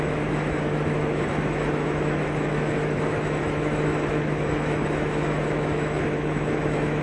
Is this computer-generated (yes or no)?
yes